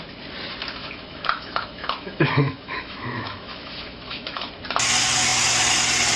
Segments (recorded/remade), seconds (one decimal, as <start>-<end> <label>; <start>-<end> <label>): 0.0-0.8 recorded; 0.8-4.5 remade; 4.5-6.2 recorded